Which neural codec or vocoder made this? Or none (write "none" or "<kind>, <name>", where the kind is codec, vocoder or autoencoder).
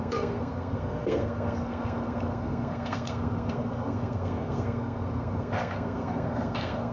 codec, SNAC